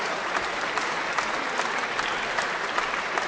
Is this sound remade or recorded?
recorded